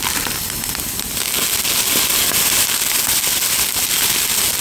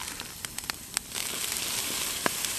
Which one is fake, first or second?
second